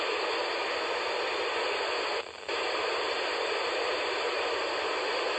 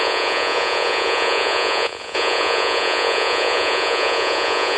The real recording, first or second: first